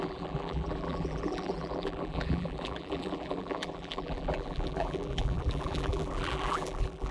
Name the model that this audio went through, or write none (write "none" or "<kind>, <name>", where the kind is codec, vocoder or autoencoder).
vocoder, BigVGAN v2